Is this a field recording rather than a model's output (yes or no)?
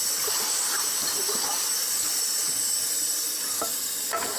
yes